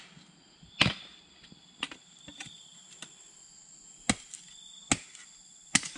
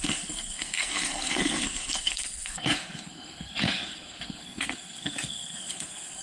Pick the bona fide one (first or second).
first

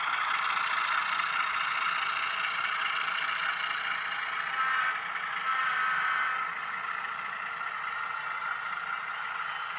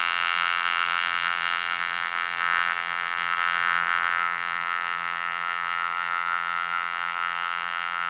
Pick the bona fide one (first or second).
first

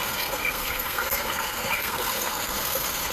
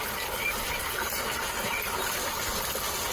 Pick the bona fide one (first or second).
second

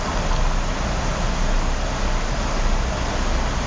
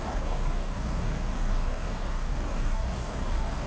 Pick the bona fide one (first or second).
first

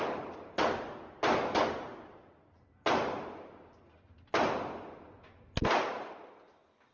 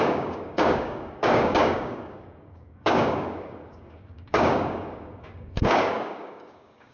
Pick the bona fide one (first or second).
first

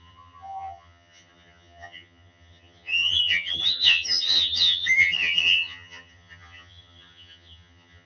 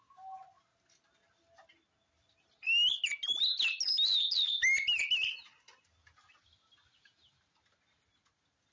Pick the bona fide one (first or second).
second